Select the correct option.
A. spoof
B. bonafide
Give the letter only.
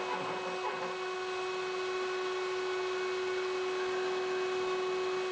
B